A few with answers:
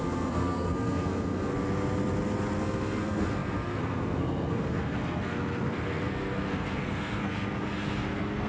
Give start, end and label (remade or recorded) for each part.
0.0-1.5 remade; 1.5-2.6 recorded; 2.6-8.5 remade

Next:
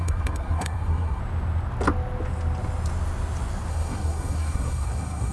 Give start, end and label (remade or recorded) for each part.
0.0-1.2 remade; 1.2-3.7 recorded; 3.7-5.3 remade

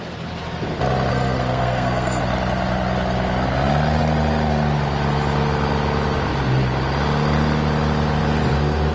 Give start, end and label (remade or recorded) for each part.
0.0-1.1 recorded; 1.1-2.2 remade; 2.2-8.9 recorded

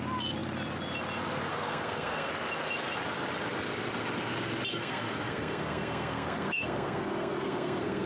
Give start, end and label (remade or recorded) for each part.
0.0-1.5 recorded; 1.5-2.3 remade; 2.3-4.7 recorded; 4.7-8.1 remade